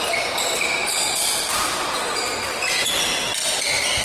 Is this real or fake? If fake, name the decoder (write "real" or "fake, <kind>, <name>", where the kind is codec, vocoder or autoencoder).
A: fake, vocoder, BigVGAN v2